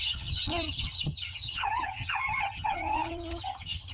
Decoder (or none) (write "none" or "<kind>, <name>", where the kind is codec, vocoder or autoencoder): vocoder, HiFi-GAN